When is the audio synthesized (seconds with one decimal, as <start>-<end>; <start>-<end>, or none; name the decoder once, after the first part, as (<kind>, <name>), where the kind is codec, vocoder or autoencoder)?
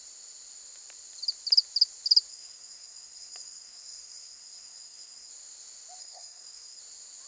2.3-5.3 (codec, SNAC); 6.0-6.8